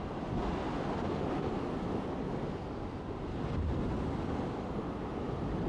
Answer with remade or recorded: recorded